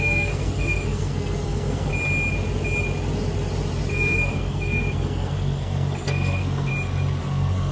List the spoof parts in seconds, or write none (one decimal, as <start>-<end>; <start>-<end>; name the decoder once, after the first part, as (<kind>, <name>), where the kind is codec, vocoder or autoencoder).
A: 0.0-1.9 (codec, SNAC); 3.9-6.7; 7.2-7.7